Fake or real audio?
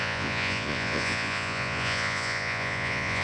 fake